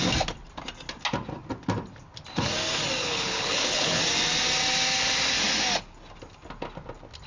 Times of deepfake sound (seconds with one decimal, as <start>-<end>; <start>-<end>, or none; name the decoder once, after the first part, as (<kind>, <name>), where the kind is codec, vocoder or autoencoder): 3.0-4.0 (codec, HILCodec)